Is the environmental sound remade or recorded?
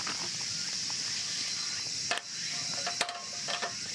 recorded